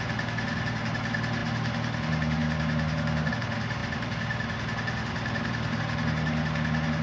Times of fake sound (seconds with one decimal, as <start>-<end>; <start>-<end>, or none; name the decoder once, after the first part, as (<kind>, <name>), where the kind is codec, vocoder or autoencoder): none